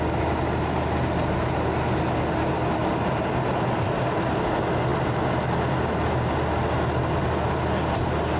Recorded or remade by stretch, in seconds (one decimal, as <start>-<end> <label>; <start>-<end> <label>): 0.0-8.4 recorded